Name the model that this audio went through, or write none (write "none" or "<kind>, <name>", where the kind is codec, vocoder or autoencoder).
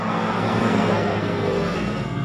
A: codec, SNAC